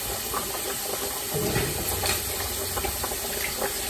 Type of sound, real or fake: real